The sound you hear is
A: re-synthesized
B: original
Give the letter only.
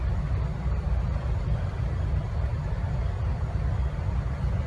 B